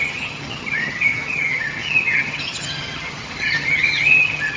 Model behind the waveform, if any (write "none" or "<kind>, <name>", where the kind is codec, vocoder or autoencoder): vocoder, HiFi-GAN